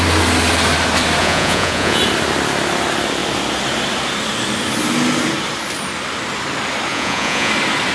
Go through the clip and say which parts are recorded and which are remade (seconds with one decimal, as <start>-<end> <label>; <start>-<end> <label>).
0.0-1.2 recorded; 1.2-2.0 remade; 2.0-6.9 recorded; 6.9-7.5 remade; 7.5-7.9 recorded